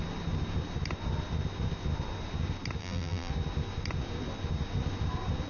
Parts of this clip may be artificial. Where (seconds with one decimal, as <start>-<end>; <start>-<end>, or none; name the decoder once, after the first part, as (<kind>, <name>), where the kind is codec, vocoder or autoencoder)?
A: 2.8-3.3 (vocoder, BigVGAN v2)